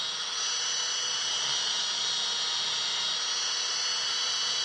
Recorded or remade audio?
recorded